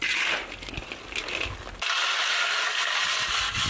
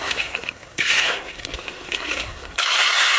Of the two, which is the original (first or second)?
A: first